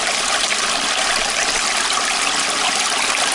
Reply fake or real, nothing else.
real